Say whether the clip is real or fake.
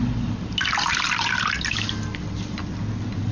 real